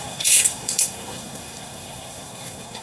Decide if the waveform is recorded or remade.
remade